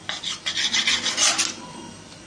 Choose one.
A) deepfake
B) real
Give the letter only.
B